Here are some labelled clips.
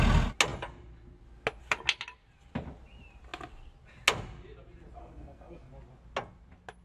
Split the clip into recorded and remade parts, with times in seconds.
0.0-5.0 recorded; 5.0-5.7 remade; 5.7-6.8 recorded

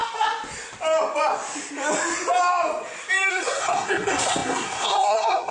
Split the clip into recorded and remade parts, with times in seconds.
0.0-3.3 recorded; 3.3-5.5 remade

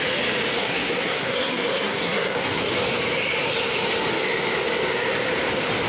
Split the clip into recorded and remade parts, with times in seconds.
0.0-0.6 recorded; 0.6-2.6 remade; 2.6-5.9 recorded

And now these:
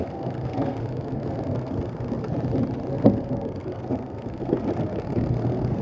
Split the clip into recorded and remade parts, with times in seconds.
0.0-2.3 remade; 2.3-2.9 recorded; 2.9-5.8 remade